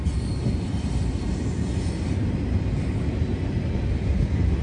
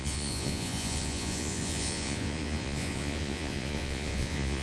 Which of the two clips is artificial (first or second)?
second